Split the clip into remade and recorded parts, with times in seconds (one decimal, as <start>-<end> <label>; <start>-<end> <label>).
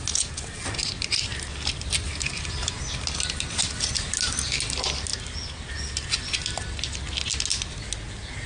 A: 0.0-8.5 recorded